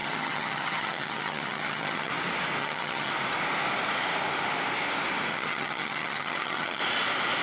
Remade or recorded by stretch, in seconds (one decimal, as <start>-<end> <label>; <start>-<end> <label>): 0.0-2.1 remade; 2.1-2.6 recorded; 2.6-3.1 remade; 3.1-5.3 recorded; 5.3-6.8 remade; 6.8-7.4 recorded